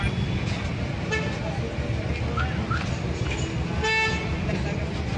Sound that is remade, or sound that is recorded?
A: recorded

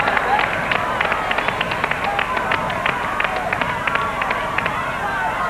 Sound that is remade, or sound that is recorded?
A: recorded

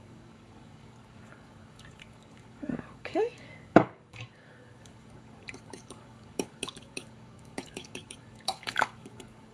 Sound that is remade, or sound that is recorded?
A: remade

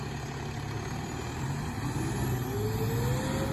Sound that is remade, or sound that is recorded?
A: recorded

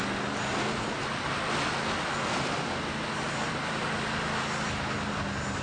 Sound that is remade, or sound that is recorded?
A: recorded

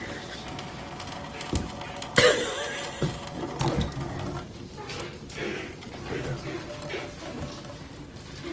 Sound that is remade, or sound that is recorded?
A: recorded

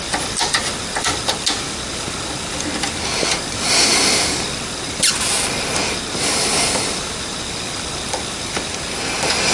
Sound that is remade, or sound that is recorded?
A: recorded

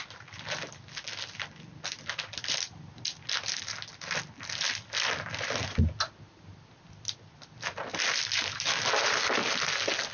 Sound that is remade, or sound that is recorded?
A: recorded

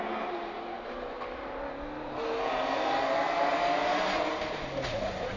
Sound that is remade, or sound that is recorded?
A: recorded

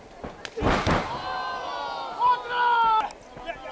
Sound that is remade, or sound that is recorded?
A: recorded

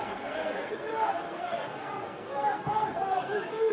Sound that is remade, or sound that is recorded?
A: remade